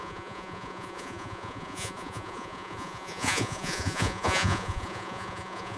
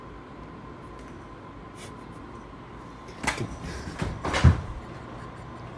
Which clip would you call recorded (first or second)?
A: second